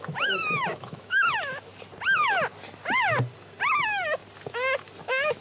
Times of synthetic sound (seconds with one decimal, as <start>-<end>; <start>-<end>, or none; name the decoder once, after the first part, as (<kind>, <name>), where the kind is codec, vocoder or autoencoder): 0.0-1.7 (autoencoder, DAC-VAE); 3.7-4.2; 5.0-5.4